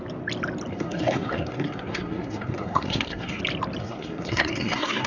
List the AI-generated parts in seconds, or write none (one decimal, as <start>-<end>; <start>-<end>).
0.7-3.4; 3.8-5.1